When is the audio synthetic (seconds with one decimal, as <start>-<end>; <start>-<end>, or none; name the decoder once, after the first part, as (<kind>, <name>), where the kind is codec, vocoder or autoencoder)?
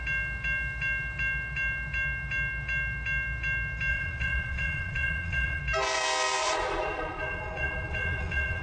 3.9-5.6 (vocoder, Vocos); 6.4-8.6